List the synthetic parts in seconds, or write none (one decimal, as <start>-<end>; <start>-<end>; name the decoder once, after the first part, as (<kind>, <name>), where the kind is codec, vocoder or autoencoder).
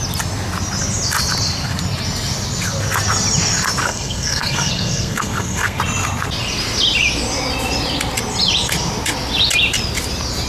3.8-5.8 (codec, SNAC)